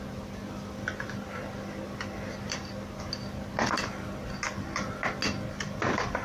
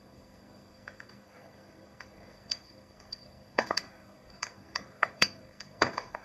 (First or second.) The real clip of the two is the first